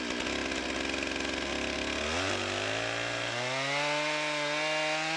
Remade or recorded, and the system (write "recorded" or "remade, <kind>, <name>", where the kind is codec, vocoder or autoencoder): recorded